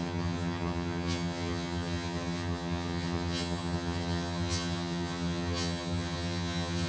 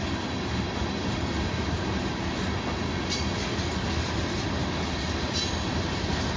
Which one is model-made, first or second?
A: first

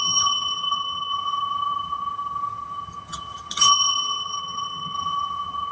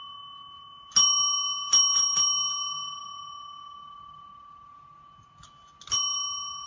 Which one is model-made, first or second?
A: first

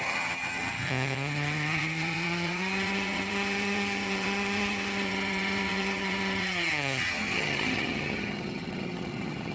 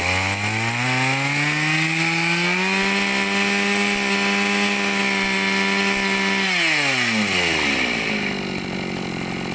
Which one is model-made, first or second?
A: first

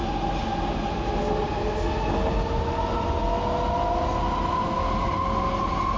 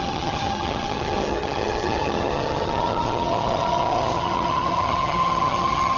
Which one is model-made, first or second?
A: second